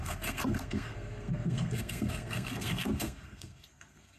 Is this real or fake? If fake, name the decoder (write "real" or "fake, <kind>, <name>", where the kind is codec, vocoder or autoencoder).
fake, codec, SNAC